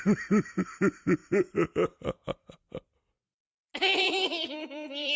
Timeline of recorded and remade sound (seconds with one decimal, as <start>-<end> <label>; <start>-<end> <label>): 0.0-1.2 remade; 1.2-4.0 recorded; 4.0-5.2 remade